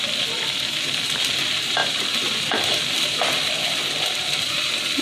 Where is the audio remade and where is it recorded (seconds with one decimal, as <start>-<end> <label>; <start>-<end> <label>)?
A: 0.0-0.6 remade; 0.6-1.8 recorded; 1.8-4.5 remade; 4.5-5.0 recorded